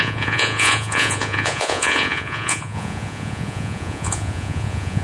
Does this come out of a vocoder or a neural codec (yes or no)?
yes